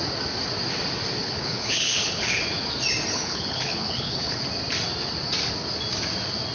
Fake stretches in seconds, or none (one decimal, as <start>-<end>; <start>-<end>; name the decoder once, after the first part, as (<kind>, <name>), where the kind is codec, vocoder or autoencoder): 1.2-2.4 (codec, HILCodec); 3.1-4.4